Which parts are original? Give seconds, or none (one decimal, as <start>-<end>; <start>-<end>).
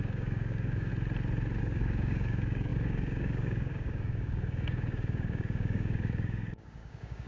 0.9-1.6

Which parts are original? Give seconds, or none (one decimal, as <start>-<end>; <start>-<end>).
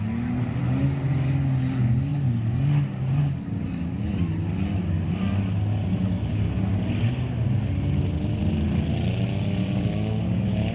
0.0-9.6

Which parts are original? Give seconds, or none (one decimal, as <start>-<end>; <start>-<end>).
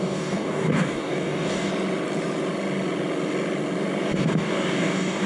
1.7-4.1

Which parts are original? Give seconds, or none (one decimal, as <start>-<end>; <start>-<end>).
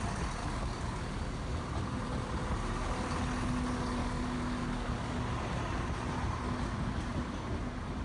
0.0-0.4; 1.6-4.0; 5.2-8.0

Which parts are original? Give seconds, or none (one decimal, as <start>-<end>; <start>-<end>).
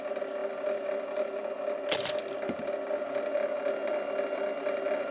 0.0-5.1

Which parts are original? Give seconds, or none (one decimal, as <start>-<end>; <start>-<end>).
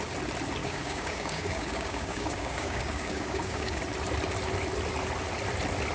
0.0-0.6; 3.8-5.9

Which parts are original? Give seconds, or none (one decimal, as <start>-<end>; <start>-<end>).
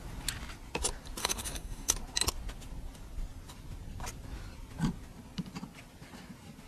0.0-1.2; 1.9-6.7